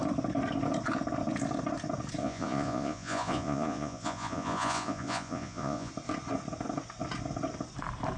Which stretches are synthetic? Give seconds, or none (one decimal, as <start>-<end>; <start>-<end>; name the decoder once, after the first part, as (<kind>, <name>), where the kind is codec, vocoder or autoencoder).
2.2-5.9 (vocoder, Vocos)